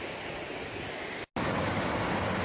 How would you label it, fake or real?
real